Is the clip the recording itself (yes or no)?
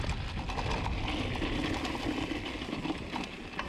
yes